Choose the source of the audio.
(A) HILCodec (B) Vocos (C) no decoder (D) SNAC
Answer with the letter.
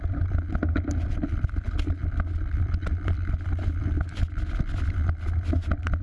C